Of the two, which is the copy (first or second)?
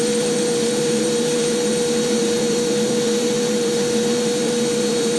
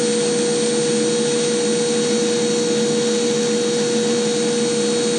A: first